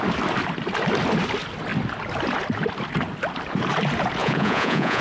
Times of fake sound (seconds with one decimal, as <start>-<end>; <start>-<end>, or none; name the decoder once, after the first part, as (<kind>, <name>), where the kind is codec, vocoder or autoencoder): 4.2-5.0 (vocoder, Vocos)